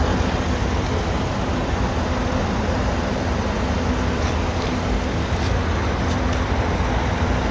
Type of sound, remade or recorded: recorded